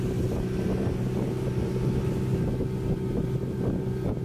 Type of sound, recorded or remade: recorded